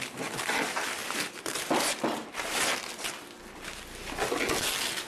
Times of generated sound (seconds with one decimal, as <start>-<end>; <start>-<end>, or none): 0.0-2.7